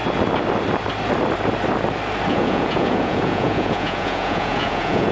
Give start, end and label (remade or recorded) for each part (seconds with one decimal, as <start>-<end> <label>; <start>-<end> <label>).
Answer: 0.0-2.3 recorded; 2.3-5.1 remade